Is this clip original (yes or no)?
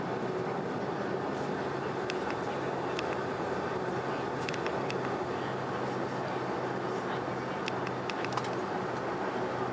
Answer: yes